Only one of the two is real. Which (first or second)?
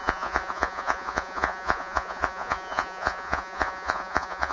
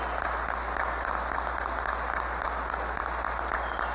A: second